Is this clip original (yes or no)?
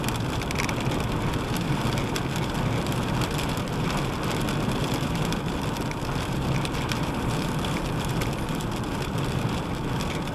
no